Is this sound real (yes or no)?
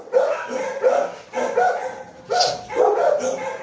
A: yes